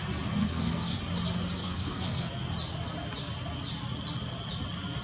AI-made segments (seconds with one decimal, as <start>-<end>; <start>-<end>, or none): 0.4-1.0; 1.6-2.3